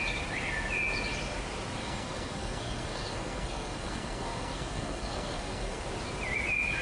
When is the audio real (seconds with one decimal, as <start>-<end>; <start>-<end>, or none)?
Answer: 0.0-1.8; 5.8-6.8